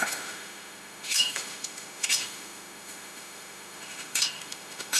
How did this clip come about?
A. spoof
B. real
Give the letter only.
A